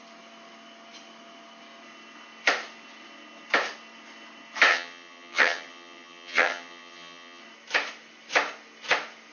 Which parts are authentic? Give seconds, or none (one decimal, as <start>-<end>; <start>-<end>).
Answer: 0.0-4.7; 7.4-9.3